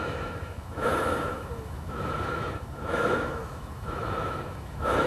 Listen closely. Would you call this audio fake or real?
fake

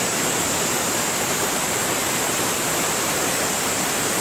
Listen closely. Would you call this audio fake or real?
fake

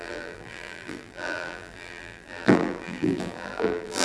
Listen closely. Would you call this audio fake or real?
fake